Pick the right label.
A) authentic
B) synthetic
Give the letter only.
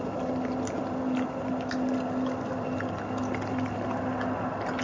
A